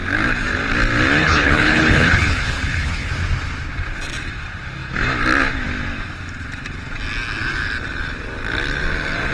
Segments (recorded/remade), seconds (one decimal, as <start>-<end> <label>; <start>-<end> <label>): 0.0-1.2 recorded; 1.2-3.1 remade; 3.1-9.3 recorded